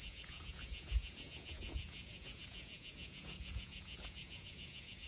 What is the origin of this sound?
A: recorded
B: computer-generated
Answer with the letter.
B